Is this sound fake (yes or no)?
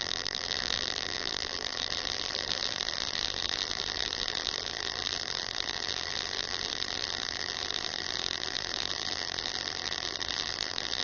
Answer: yes